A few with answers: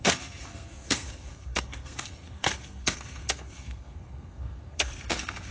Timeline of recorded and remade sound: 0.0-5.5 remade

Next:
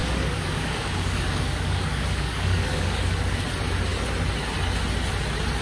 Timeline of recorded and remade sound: 0.0-3.4 remade; 3.4-5.6 recorded

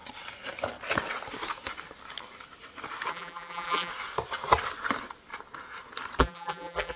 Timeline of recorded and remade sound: 0.0-3.1 recorded; 3.1-3.9 remade; 3.9-6.2 recorded; 6.2-7.0 remade

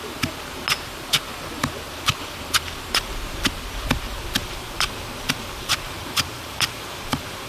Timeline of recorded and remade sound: 0.0-4.4 recorded; 4.4-7.5 remade

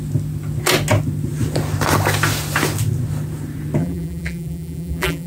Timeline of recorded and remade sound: 0.0-3.8 recorded; 3.8-5.3 remade